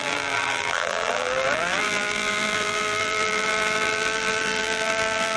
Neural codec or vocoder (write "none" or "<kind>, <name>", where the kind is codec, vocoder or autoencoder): vocoder, BigVGAN v2